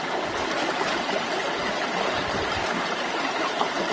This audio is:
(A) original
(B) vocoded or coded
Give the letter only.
B